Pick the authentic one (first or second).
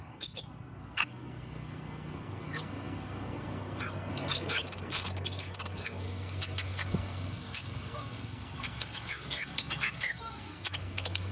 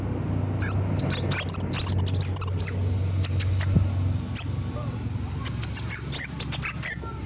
second